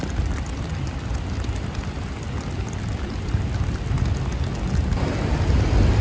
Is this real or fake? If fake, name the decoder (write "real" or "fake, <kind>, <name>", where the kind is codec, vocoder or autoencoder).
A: real